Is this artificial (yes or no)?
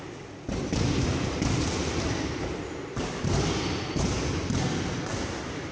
no